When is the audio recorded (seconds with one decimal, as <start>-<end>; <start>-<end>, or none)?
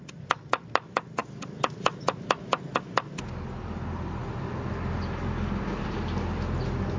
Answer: 0.0-7.0